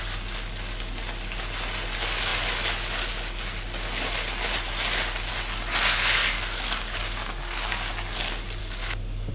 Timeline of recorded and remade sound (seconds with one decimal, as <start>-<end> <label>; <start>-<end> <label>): 0.0-6.2 recorded; 6.2-7.9 remade; 7.9-8.6 recorded; 8.6-9.3 remade